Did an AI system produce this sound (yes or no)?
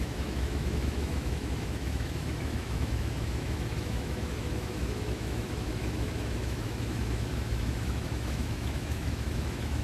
yes